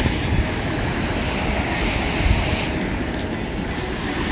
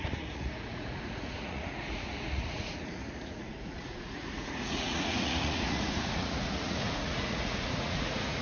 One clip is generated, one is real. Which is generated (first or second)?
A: second